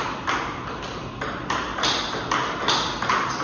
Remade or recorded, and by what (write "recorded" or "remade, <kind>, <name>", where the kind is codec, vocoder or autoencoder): recorded